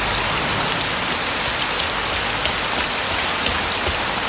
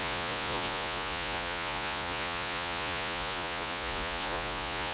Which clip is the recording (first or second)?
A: first